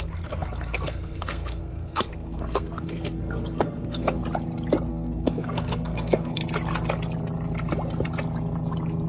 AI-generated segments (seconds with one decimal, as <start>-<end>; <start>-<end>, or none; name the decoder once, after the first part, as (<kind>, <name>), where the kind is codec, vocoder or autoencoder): 0.0-4.2 (codec, SNAC); 4.9-6.4